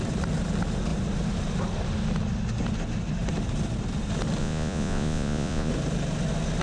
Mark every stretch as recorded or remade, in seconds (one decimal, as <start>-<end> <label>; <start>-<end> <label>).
0.0-4.4 recorded; 4.4-5.7 remade; 5.7-6.6 recorded